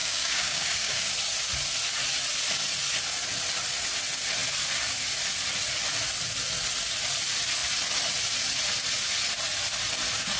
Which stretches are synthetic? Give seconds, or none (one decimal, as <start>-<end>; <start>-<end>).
0.0-1.1